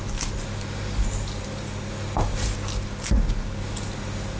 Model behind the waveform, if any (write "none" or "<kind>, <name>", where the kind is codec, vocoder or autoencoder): none